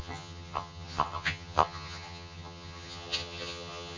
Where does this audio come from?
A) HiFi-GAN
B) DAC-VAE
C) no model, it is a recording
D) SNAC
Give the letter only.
A